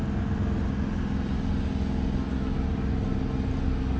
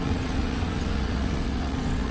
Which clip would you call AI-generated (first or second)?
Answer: second